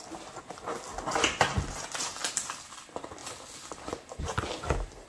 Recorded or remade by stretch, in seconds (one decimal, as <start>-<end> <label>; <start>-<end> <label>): 0.0-5.1 recorded